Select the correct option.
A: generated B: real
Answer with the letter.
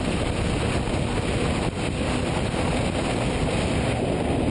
B